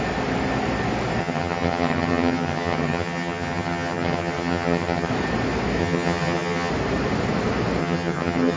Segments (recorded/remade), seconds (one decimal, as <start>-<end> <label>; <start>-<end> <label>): 0.0-1.2 recorded; 1.2-5.1 remade; 5.1-5.8 recorded; 5.8-6.7 remade; 6.7-7.8 recorded; 7.8-8.6 remade